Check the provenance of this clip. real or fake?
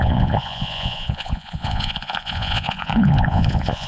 fake